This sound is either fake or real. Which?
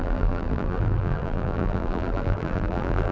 fake